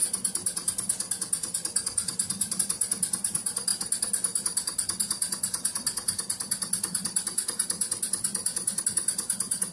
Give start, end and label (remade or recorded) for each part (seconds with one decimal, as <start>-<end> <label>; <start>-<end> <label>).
0.0-9.7 recorded